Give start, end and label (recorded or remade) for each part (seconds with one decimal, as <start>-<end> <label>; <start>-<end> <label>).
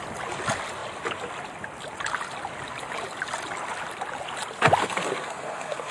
0.0-4.8 recorded; 4.8-5.9 remade